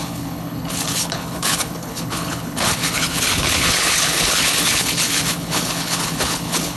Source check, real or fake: fake